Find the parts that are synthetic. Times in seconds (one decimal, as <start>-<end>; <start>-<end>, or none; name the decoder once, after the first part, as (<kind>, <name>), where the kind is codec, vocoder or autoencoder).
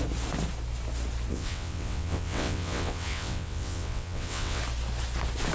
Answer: 1.3-4.6 (vocoder, WaveNeXt)